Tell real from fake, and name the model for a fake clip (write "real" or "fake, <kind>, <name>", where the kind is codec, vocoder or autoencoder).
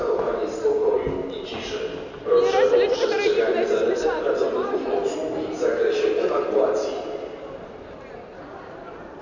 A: real